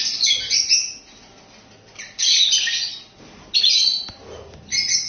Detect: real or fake real